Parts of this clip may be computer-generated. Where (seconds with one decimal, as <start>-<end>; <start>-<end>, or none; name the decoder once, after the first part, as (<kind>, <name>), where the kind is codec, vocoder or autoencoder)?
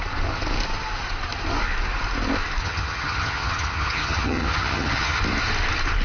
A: 2.6-5.2 (vocoder, HiFi-GAN)